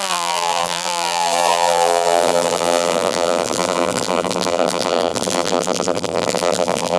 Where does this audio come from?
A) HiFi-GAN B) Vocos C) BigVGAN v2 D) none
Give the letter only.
C